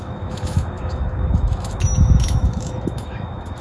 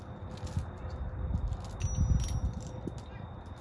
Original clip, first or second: second